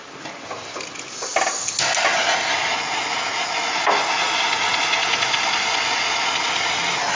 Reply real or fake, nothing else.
real